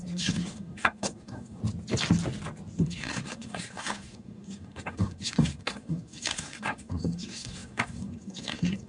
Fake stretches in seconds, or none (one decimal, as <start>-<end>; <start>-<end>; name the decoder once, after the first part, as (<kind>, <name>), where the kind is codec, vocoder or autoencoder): 0.0-1.6 (codec, SNAC); 2.8-8.9